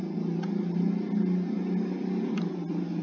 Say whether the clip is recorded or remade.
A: recorded